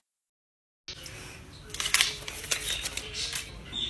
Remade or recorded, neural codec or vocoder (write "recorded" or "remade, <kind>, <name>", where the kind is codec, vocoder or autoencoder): recorded